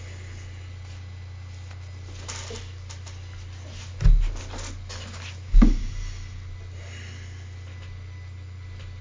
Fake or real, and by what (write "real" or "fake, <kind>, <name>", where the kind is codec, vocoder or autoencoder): real